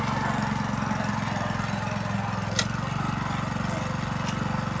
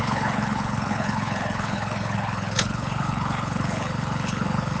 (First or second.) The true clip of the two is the first